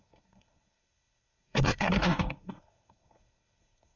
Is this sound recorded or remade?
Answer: remade